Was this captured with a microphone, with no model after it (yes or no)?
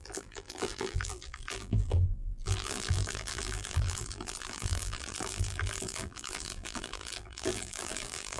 no